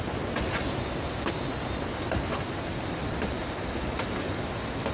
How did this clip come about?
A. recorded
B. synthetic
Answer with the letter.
A